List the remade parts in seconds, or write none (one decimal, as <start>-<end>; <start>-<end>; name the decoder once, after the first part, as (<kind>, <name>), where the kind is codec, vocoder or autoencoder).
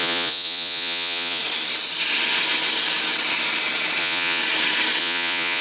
0.0-1.4 (vocoder, Vocos); 4.0-4.4; 5.0-5.6